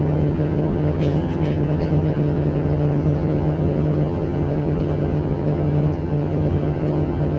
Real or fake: fake